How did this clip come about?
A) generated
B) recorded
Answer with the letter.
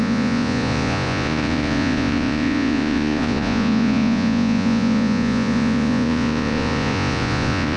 A